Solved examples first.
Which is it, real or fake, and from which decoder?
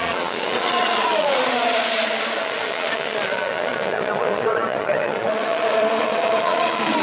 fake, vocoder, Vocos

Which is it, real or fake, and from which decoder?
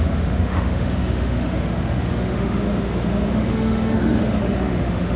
fake, autoencoder, DAC-VAE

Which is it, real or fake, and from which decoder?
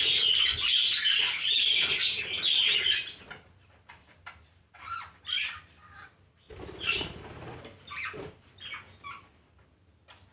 real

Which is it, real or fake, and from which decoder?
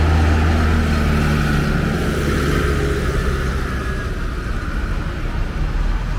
real